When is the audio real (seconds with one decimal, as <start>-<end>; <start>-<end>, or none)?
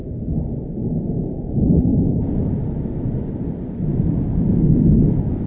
3.3-5.5